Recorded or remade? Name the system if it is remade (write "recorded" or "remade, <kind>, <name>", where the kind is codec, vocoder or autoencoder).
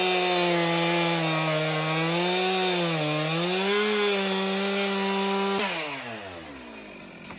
recorded